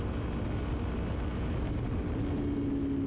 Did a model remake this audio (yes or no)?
no